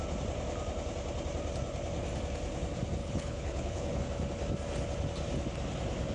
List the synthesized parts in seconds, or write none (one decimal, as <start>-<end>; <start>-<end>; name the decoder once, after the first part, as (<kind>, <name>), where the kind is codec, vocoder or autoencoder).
3.0-4.0 (codec, HILCodec)